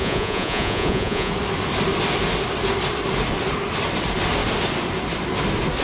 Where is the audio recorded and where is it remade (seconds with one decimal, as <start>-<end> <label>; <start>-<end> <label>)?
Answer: 0.0-1.3 remade; 1.3-5.8 recorded